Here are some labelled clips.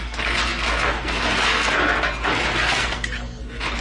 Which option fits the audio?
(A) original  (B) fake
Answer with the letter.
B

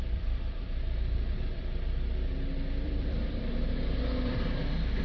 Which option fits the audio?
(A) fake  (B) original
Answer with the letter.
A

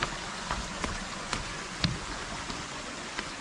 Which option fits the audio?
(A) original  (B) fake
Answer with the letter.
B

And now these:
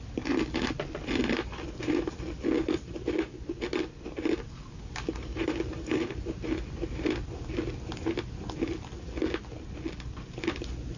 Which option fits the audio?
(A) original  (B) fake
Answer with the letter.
A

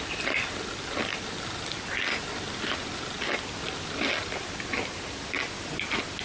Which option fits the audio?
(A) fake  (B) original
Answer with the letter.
B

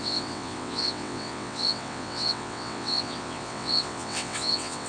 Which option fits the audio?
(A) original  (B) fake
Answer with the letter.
B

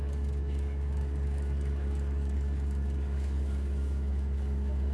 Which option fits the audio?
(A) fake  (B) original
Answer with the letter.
A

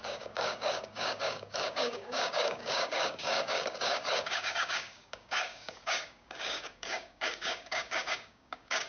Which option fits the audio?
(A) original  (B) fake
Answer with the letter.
B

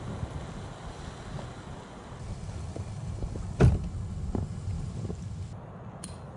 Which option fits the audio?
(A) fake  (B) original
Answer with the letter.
B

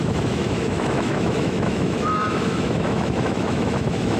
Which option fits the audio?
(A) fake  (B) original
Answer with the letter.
A